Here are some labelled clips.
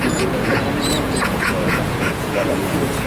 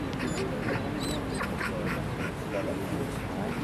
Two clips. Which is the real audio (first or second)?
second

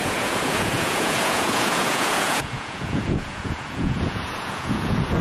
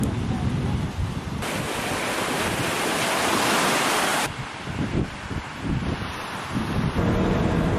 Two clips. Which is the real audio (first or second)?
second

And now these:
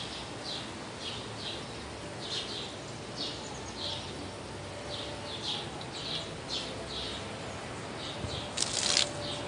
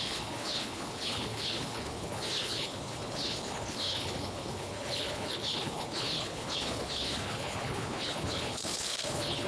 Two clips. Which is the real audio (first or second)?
first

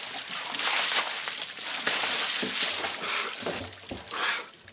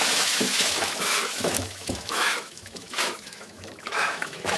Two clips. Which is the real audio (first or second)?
first